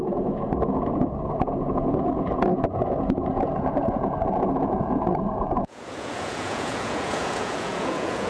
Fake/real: fake